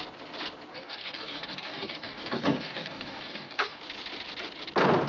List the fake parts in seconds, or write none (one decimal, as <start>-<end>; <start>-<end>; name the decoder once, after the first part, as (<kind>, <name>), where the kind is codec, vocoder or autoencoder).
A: 0.7-3.8 (codec, DAC)